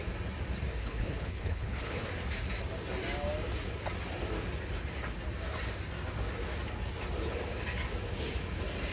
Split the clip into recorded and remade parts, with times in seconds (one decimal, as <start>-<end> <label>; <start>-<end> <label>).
0.0-0.8 recorded; 0.8-2.1 remade; 2.1-8.9 recorded